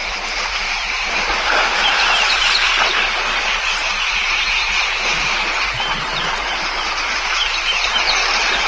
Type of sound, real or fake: real